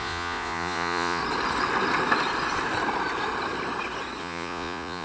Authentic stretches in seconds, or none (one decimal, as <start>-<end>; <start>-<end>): 1.2-4.2